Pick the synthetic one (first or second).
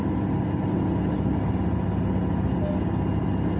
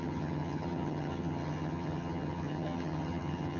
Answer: second